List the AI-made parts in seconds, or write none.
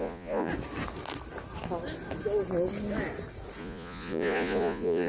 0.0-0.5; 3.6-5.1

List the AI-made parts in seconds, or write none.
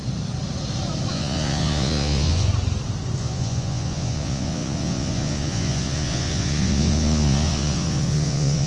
1.1-2.5; 3.2-8.7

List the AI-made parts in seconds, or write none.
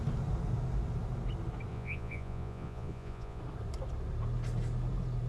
1.7-3.4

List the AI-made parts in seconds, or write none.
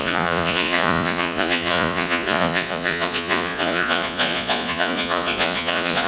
0.0-6.1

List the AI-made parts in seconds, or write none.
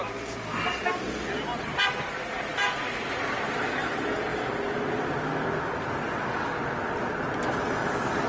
none